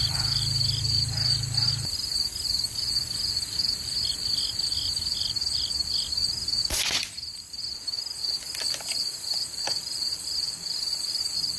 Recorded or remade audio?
remade